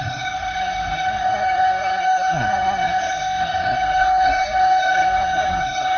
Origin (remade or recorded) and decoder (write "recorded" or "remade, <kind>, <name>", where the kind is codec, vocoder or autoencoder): remade, codec, SNAC